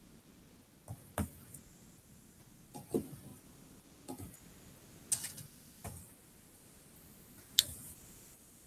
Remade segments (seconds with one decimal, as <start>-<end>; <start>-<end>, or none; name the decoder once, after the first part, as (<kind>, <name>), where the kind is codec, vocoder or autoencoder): none

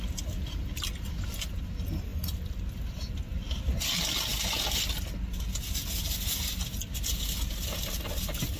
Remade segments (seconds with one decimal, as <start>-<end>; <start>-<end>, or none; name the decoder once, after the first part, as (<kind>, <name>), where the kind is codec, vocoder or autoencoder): none

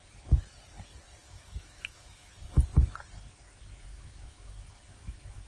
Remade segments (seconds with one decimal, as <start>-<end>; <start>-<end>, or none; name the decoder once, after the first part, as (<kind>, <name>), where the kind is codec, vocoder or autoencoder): 1.2-2.3 (autoencoder, DAC-VAE); 3.9-5.5

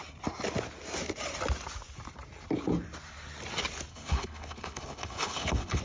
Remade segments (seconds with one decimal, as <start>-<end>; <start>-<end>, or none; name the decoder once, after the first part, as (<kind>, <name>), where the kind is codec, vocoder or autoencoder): 3.9-5.8 (codec, HILCodec)

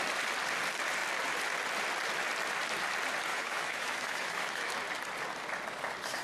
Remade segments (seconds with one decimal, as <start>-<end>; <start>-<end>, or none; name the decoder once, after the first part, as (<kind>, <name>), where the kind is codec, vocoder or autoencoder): 3.3-4.7 (autoencoder, DAC-VAE)

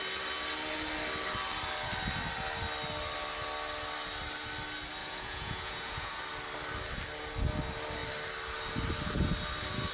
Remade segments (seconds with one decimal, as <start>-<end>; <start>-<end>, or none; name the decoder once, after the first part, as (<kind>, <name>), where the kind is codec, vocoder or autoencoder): 5.0-6.1 (vocoder, Vocos)

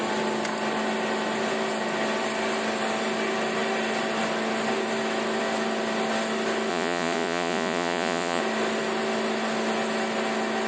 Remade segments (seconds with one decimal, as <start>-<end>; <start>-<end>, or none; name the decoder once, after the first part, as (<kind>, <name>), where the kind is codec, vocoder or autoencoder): 6.7-8.4 (vocoder, Vocos)